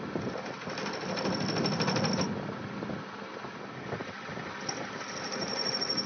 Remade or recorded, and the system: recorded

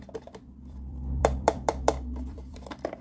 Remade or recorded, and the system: remade, vocoder, BigVGAN v2